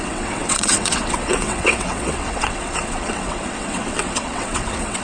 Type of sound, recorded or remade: remade